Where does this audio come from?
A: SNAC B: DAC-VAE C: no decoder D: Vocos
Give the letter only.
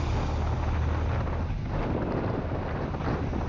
C